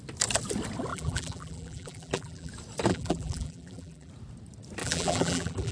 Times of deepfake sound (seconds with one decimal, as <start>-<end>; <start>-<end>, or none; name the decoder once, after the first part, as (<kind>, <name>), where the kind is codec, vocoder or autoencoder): 0.9-2.5 (vocoder, BigVGAN v2); 2.9-4.1; 4.8-5.7

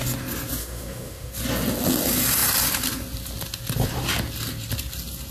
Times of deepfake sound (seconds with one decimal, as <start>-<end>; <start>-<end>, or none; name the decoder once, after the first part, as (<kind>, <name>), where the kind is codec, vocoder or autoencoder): 0.6-1.3 (autoencoder, DAC-VAE)

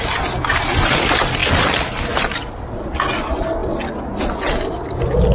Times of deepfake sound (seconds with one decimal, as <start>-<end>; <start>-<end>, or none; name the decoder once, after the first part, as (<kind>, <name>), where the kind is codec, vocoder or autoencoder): none

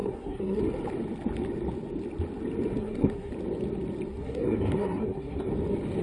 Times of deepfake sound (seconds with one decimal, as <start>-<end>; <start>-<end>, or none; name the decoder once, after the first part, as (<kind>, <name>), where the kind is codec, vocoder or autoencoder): 0.0-0.6 (codec, SNAC); 2.8-3.3; 4.1-5.5

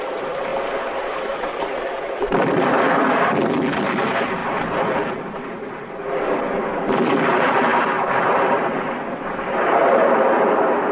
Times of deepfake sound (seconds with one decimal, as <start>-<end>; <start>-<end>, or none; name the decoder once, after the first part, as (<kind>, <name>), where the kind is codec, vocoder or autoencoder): 0.0-0.5 (vocoder, BigVGAN v2); 2.0-4.4; 6.6-7.7; 9.4-10.9

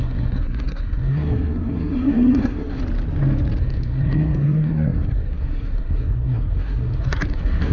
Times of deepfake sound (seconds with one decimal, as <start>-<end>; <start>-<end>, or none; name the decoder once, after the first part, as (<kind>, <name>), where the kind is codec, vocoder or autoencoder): 0.0-2.8 (codec, SNAC); 3.6-7.7

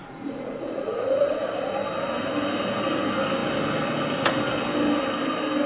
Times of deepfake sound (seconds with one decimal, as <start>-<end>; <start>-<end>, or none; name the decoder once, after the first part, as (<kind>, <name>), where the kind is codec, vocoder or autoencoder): 0.0-1.7 (vocoder, Vocos)